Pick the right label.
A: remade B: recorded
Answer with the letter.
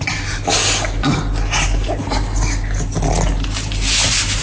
B